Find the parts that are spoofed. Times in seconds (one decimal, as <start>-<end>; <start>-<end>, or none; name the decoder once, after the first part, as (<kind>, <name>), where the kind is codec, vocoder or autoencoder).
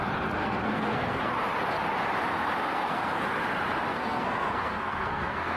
0.4-1.3 (codec, SNAC); 2.6-3.2; 3.9-5.6